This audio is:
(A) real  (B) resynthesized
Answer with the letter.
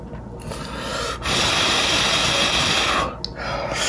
A